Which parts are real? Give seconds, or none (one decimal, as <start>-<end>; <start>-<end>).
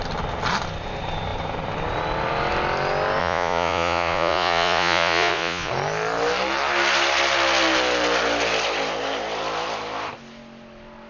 0.0-3.2; 5.7-11.1